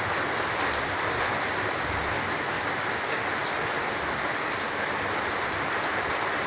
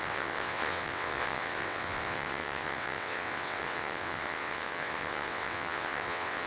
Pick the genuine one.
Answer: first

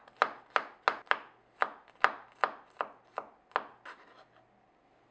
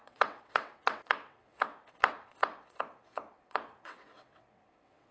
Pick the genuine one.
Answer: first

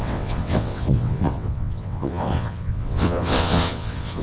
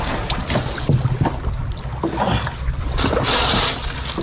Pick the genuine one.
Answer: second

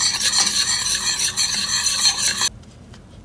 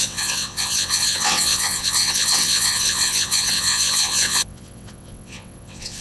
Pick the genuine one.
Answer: first